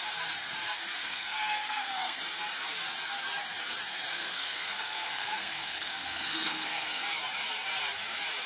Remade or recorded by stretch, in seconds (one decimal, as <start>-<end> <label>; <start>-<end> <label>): 0.0-1.0 recorded; 1.0-2.2 remade; 2.2-4.1 recorded; 4.1-7.0 remade; 7.0-8.5 recorded